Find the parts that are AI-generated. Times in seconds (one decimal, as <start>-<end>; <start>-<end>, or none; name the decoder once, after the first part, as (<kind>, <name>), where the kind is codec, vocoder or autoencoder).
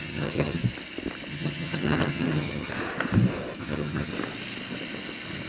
0.0-0.6 (vocoder, HiFi-GAN); 1.3-2.7; 3.6-4.1